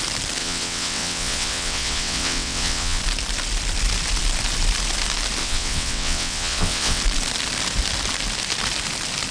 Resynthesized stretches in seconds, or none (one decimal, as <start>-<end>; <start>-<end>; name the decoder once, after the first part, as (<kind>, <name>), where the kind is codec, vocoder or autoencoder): 0.4-3.0 (vocoder, WaveNeXt); 5.4-7.0